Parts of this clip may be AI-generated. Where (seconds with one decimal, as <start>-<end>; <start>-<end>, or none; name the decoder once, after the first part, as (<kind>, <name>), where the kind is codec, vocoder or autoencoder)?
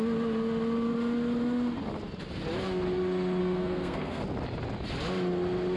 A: 3.4-4.2 (codec, SNAC)